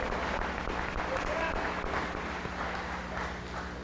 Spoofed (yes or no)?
no